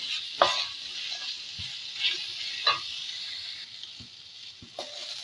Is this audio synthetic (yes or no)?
no